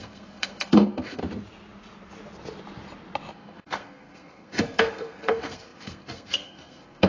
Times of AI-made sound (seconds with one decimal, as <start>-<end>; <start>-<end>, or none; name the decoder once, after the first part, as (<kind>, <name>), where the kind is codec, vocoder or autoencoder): 0.0-1.2 (codec, SNAC); 3.3-7.1